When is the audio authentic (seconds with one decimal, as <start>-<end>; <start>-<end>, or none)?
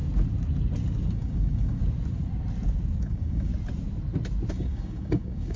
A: 0.0-1.1; 1.8-3.0; 3.5-4.5